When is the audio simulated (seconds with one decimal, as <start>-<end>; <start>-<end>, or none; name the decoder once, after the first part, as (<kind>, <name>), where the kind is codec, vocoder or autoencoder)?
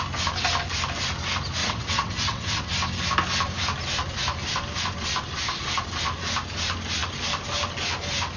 1.6-2.7 (vocoder, WaveNeXt)